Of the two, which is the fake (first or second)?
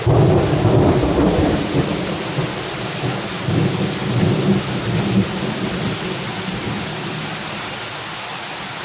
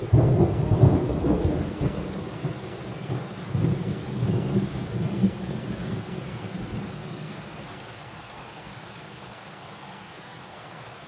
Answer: second